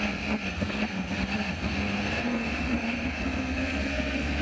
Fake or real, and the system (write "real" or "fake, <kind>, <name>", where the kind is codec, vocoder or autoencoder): fake, codec, SNAC